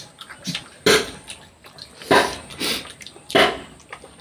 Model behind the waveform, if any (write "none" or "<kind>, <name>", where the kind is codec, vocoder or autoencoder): none